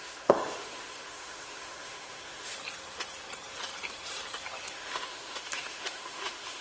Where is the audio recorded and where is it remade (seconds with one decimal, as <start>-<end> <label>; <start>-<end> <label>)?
0.0-2.5 remade; 2.5-4.7 recorded; 4.7-6.6 remade